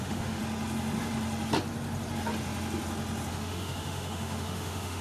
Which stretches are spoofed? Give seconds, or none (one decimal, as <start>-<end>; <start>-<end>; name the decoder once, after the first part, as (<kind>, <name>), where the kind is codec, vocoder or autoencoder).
0.0-0.4 (autoencoder, DAC-VAE); 3.3-5.0